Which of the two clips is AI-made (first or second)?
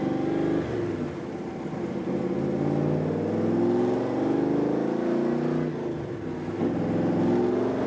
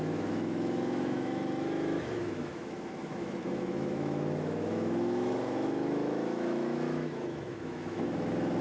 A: second